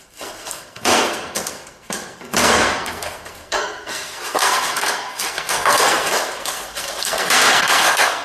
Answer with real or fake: fake